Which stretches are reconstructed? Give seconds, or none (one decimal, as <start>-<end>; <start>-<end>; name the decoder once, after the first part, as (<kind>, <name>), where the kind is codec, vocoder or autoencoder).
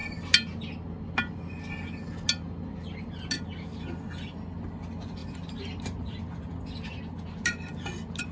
none